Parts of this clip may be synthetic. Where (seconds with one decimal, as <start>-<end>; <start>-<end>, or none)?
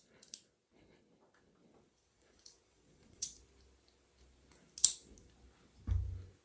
1.9-3.4